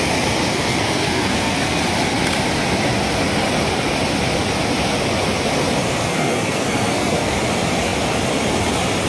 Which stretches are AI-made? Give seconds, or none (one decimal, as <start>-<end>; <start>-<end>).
0.5-1.8; 6.0-7.4